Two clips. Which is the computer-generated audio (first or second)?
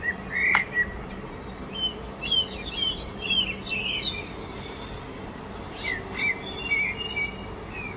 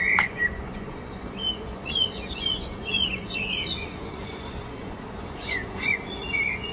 second